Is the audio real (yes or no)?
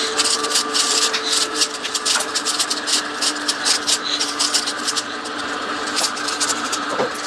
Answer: no